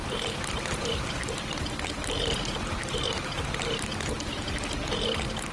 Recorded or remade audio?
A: recorded